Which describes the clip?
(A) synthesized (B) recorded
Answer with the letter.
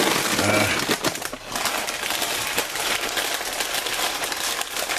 B